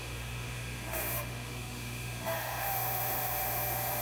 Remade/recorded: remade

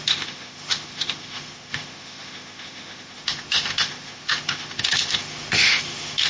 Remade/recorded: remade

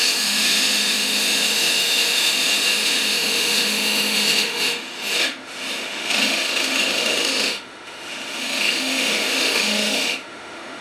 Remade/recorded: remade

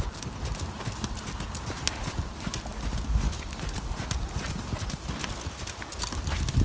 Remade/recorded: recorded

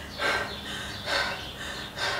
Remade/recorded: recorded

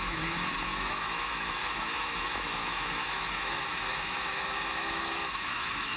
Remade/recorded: remade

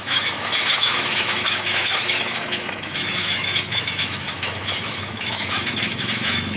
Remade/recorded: remade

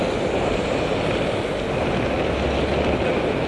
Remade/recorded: recorded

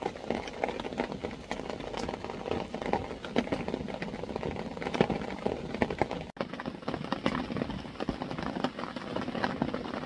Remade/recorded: recorded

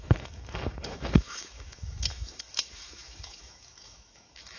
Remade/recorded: remade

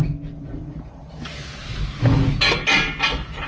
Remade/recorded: recorded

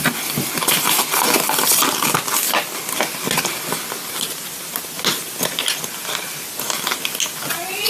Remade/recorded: recorded